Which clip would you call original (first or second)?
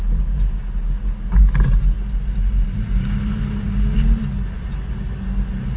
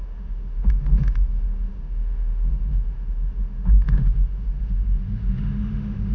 first